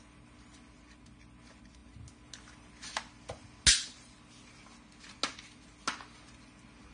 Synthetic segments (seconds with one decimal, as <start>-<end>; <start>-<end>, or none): none